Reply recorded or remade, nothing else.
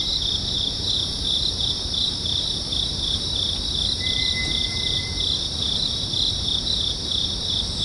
remade